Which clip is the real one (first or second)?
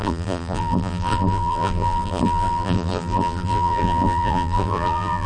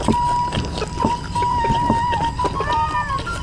second